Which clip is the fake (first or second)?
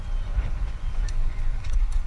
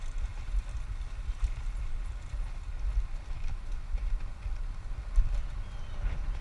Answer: first